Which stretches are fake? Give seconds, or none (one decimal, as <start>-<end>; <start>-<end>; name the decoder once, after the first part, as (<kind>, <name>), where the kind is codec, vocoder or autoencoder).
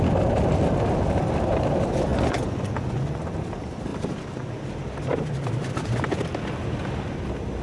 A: 2.1-3.2 (vocoder, Vocos)